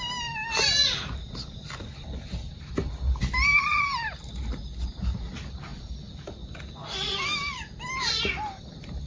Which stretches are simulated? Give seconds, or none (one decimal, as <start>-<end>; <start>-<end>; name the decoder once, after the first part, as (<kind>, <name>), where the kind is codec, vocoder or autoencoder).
none